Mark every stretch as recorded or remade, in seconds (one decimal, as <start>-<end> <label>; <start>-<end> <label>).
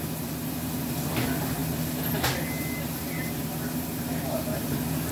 0.0-5.1 recorded